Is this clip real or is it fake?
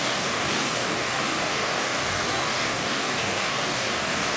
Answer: fake